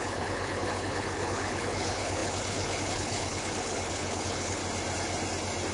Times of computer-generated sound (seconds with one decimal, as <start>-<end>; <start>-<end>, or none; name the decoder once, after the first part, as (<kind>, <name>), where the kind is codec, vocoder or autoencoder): 0.0-4.6 (codec, HILCodec)